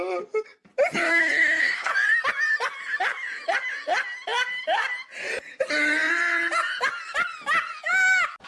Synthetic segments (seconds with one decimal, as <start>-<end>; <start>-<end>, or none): 1.1-1.9